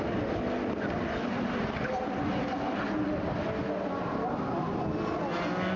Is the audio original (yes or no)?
yes